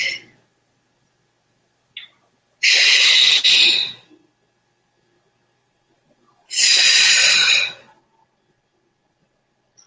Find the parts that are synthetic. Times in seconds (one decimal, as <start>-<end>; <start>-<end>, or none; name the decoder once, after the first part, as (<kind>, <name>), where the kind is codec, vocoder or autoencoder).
5.6-9.9 (vocoder, Vocos)